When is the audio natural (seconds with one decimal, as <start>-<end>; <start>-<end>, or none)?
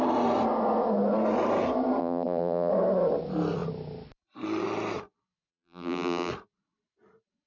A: 0.0-2.0; 2.7-5.5; 6.3-7.5